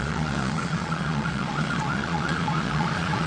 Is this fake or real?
fake